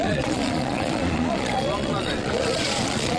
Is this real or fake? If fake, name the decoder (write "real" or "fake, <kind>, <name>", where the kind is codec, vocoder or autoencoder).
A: fake, vocoder, Vocos